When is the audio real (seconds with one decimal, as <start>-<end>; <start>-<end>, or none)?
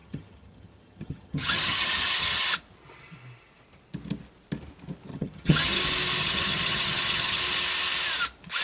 2.5-5.1; 5.8-6.2; 7.4-8.6